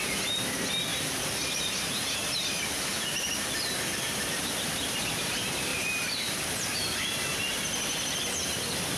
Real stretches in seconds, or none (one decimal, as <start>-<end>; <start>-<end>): 0.0-0.9; 5.0-5.7; 6.4-9.0